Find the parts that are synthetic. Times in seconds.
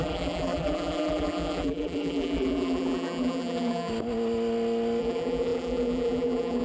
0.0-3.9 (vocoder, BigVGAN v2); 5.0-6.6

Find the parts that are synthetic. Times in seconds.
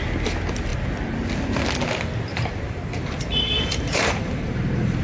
2.3-5.0 (vocoder, BigVGAN v2)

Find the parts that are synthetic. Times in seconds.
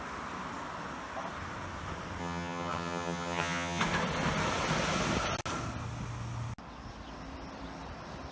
2.2-3.8 (vocoder, HiFi-GAN)